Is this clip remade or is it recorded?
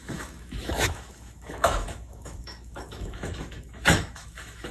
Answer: remade